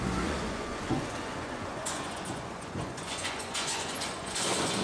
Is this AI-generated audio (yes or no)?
yes